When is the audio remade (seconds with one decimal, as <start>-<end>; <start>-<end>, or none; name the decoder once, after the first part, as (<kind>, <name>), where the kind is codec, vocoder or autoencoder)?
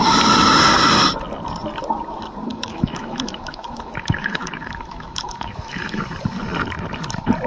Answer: 2.5-6.0 (autoencoder, DAC-VAE)